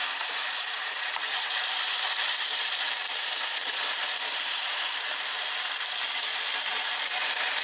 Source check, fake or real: fake